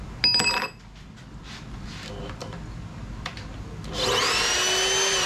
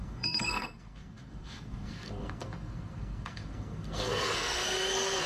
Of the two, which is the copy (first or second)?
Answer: second